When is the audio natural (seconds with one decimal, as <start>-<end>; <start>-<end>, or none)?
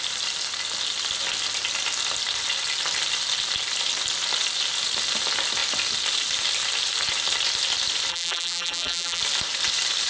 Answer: 0.0-8.1; 9.2-10.1